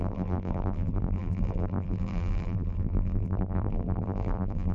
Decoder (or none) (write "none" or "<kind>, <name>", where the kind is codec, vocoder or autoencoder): vocoder, BigVGAN v2